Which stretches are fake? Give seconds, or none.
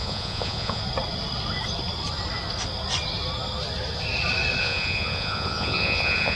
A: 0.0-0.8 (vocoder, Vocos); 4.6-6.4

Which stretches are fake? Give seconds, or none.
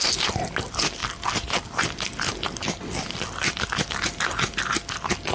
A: none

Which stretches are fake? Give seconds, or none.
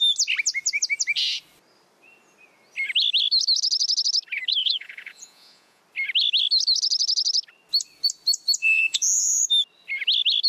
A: 4.6-5.8 (vocoder, Vocos); 8.6-9.4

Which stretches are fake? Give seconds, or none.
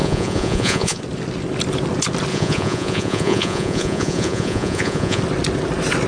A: 0.0-1.0 (vocoder, Vocos); 2.3-5.2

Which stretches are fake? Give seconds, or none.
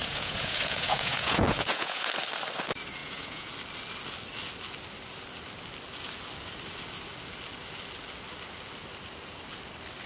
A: 0.0-2.1 (vocoder, Vocos); 3.0-3.5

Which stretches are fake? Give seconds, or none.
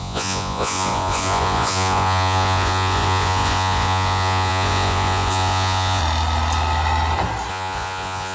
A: 0.0-6.0 (vocoder, Vocos); 7.5-8.3